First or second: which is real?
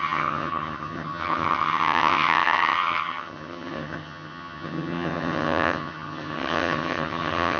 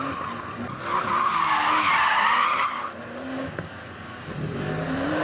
second